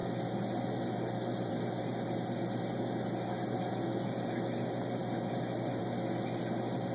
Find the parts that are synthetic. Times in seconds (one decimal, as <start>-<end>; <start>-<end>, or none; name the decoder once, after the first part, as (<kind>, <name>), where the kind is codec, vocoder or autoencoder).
none